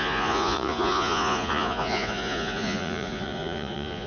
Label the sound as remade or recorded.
remade